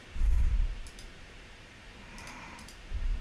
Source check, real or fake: fake